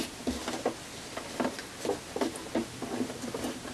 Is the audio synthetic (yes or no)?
no